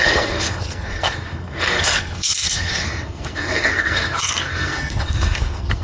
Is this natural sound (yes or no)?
no